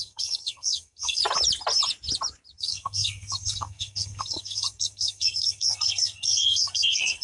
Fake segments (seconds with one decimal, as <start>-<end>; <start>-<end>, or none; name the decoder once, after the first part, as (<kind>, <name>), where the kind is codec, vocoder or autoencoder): 0.0-1.2 (codec, SNAC); 2.6-7.2